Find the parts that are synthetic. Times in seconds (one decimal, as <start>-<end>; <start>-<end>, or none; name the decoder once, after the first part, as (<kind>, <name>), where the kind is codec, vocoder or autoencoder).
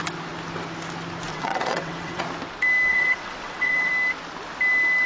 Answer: 1.3-2.2 (vocoder, WaveNeXt); 2.9-3.9